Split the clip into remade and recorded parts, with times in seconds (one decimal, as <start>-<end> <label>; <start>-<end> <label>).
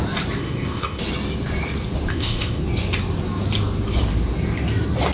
0.0-0.4 recorded; 0.4-1.0 remade; 1.0-2.1 recorded; 2.1-2.6 remade; 2.6-5.1 recorded